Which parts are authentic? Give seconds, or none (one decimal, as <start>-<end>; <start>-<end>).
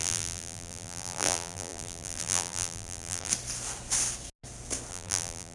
3.3-4.9